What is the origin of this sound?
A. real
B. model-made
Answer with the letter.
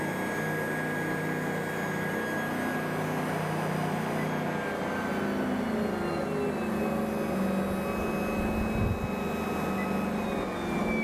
A